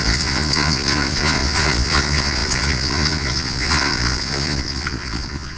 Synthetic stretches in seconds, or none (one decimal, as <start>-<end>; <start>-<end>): 0.0-5.6